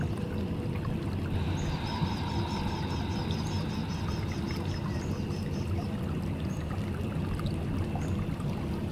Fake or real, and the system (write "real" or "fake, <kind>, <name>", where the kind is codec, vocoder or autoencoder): real